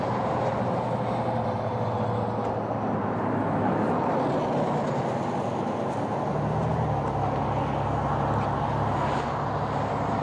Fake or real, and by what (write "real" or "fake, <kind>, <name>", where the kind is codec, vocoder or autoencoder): real